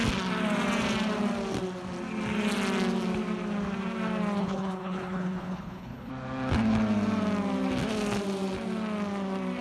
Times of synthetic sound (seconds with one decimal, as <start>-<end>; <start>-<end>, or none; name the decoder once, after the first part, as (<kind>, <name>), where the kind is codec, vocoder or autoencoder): 4.4-6.1 (codec, HILCodec)